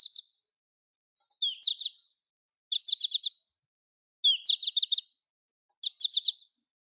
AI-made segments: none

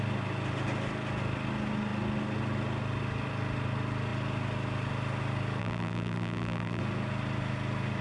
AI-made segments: 5.6-6.8

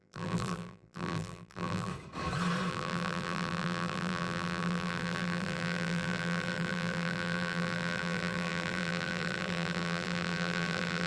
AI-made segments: 0.0-1.9; 2.7-11.1

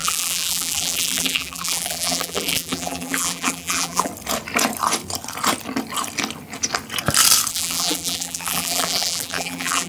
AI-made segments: 0.0-4.1; 7.5-9.9

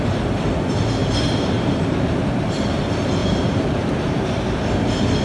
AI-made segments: 1.0-2.5; 3.2-4.4

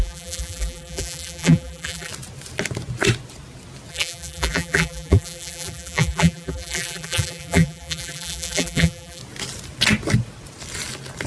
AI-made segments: 0.0-2.1; 3.9-9.2

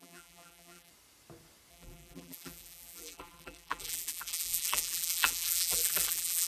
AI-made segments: 0.0-0.9; 1.7-6.5